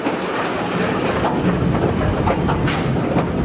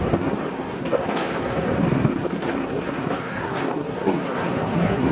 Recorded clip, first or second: first